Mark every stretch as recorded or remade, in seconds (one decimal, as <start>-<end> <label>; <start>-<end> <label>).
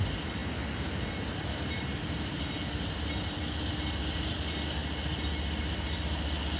0.0-6.6 recorded